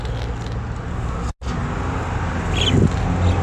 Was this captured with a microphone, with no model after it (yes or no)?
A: yes